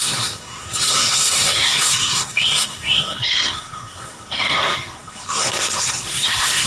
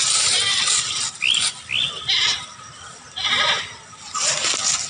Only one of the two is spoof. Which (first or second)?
first